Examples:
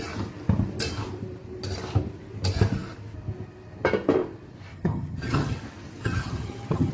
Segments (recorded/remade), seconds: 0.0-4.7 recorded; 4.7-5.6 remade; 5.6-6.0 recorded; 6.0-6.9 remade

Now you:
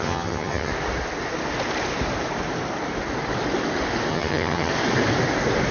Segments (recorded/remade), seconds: 0.0-0.7 remade; 0.7-4.1 recorded; 4.1-4.7 remade; 4.7-5.7 recorded

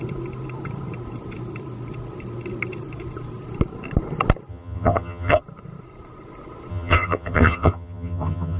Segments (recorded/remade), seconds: 0.0-4.5 recorded; 4.5-5.4 remade; 5.4-6.7 recorded; 6.7-8.6 remade

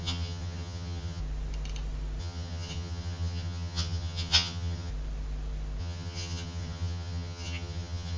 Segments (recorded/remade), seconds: 0.0-1.2 remade; 1.2-2.2 recorded; 2.2-4.9 remade; 4.9-5.8 recorded; 5.8-8.2 remade

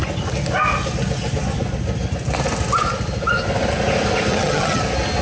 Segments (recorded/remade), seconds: 0.0-4.3 recorded; 4.3-4.8 remade; 4.8-5.2 recorded

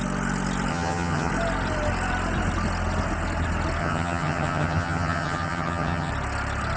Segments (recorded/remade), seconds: 0.0-0.7 recorded; 0.7-1.3 remade; 1.3-3.8 recorded; 3.8-6.1 remade; 6.1-6.8 recorded

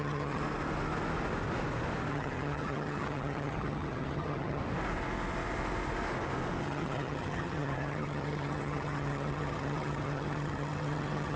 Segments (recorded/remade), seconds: 0.0-0.4 remade; 0.4-2.1 recorded; 2.1-4.6 remade; 4.6-6.6 recorded; 6.6-11.4 remade

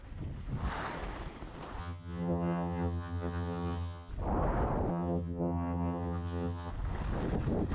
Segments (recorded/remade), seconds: 0.0-1.8 recorded; 1.8-4.1 remade; 4.1-4.9 recorded; 4.9-6.7 remade; 6.7-7.7 recorded